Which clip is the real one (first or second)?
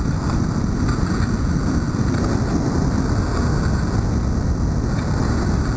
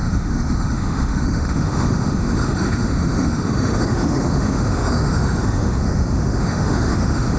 first